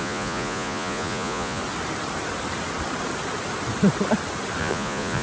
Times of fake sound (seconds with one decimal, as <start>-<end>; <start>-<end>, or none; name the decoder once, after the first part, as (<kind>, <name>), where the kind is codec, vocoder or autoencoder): 0.0-1.6 (vocoder, Vocos); 4.6-5.2